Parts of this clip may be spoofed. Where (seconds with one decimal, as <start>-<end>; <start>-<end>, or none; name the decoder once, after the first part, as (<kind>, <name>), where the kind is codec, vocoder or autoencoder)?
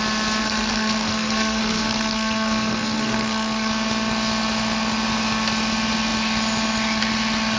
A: 0.4-3.7 (codec, SNAC)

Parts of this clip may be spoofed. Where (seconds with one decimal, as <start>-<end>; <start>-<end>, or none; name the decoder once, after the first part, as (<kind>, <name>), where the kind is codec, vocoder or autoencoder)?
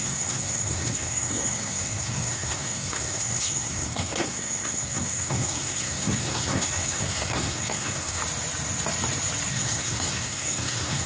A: 0.0-8.2 (codec, SNAC); 9.5-11.1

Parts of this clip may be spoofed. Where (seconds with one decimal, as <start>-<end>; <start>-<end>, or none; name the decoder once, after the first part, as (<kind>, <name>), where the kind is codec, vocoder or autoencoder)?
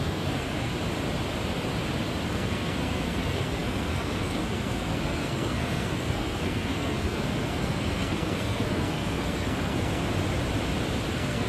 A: 0.0-0.7 (codec, SNAC); 2.3-10.0; 11.1-11.5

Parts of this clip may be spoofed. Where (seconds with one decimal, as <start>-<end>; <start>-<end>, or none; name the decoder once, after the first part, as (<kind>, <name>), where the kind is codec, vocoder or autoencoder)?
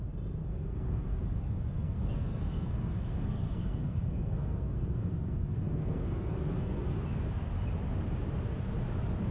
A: 0.4-1.2 (codec, SNAC); 1.7-7.0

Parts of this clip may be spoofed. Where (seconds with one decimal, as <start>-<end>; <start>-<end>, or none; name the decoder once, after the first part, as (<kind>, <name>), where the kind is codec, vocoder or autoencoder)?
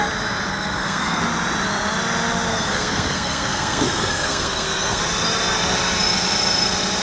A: 0.5-1.2 (codec, SNAC); 2.5-5.0